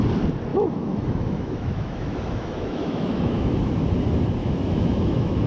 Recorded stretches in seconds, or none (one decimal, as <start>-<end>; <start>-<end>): 0.0-0.5; 3.8-4.4